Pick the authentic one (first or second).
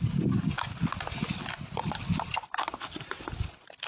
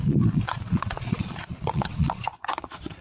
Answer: first